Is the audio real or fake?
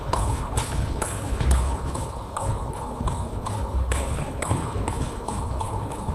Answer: fake